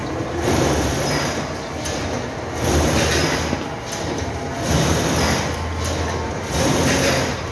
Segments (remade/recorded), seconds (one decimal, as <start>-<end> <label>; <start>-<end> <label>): 0.0-7.5 recorded